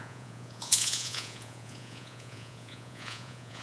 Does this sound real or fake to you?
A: fake